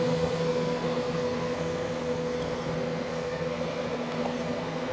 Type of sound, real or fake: fake